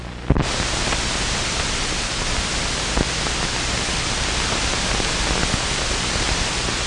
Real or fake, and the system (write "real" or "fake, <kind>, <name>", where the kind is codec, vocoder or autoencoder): real